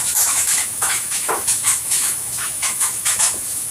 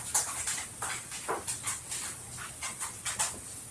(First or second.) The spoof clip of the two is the first